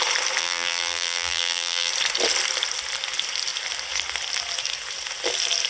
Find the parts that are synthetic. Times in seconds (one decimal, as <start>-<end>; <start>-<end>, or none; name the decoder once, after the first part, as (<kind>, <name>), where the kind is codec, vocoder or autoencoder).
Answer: 0.4-1.9 (vocoder, BigVGAN v2)